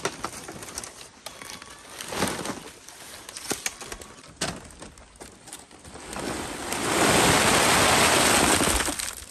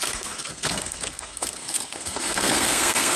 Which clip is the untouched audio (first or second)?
first